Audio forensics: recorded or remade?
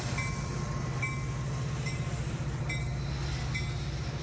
recorded